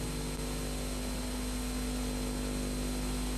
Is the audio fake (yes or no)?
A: no